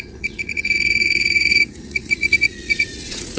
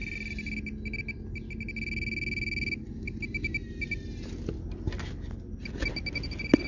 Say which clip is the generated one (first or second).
first